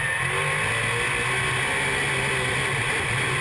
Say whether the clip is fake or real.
real